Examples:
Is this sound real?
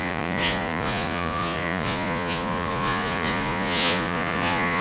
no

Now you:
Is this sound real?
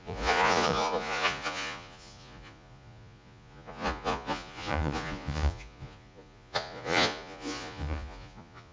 no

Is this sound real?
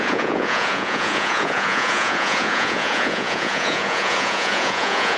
no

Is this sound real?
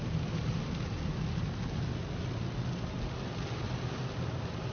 yes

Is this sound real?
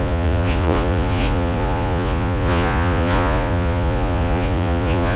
no